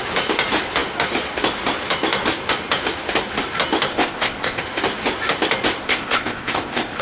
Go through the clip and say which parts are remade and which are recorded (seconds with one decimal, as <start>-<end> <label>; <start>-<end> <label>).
0.0-3.9 recorded; 3.9-4.6 remade; 4.6-5.8 recorded; 5.8-7.0 remade